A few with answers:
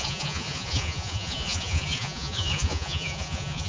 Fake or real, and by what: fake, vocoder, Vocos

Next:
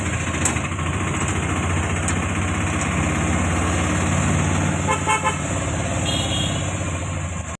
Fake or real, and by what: real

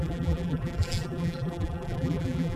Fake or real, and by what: fake, vocoder, BigVGAN v2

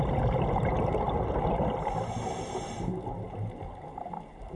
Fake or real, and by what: real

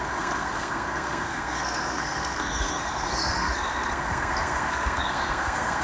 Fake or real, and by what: fake, codec, SNAC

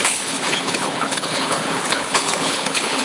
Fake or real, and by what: fake, codec, HILCodec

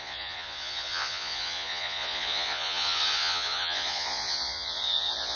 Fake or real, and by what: fake, vocoder, Vocos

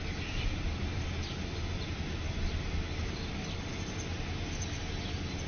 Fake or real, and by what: real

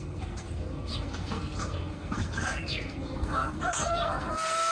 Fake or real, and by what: fake, codec, SNAC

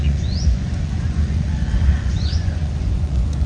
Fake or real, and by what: fake, vocoder, Vocos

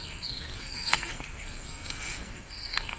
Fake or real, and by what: fake, codec, SNAC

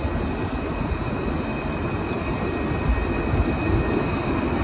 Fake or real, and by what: real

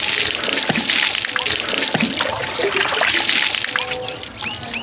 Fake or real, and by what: real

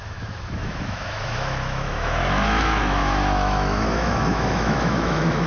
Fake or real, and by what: fake, autoencoder, DAC-VAE